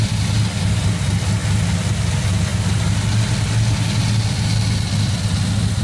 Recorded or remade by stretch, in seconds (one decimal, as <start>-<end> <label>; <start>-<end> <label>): 0.0-5.8 recorded